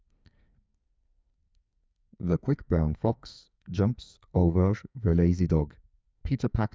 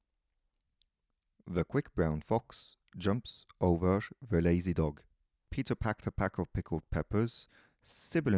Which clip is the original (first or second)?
second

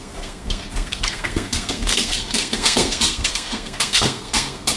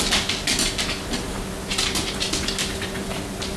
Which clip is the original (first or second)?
second